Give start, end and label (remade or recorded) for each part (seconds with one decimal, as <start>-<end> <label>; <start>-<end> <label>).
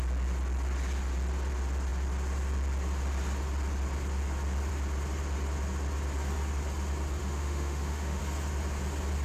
0.0-7.2 recorded; 7.2-8.2 remade; 8.2-9.2 recorded